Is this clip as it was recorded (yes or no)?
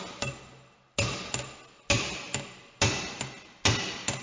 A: yes